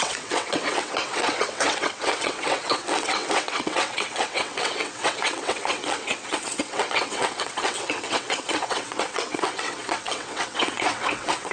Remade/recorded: remade